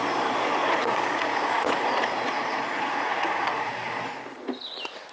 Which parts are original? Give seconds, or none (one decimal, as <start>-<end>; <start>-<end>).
0.0-0.6; 3.7-5.1